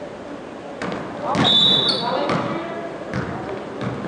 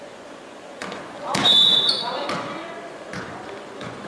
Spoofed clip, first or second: second